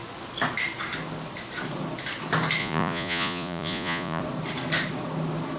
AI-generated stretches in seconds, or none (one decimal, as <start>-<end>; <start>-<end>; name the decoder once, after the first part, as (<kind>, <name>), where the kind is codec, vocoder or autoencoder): 2.6-4.2 (vocoder, Vocos)